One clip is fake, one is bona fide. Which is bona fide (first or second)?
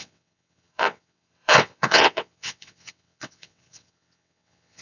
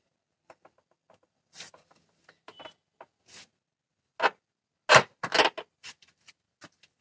second